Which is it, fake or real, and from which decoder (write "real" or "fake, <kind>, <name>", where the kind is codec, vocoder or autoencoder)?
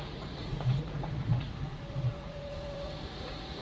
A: fake, vocoder, Vocos